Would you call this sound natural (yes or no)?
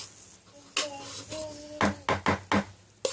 yes